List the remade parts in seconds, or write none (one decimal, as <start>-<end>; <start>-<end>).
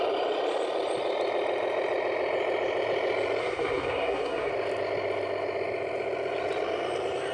3.4-4.5